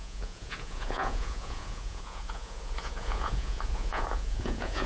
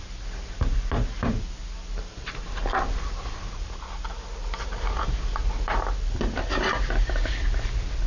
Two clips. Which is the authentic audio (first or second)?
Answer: second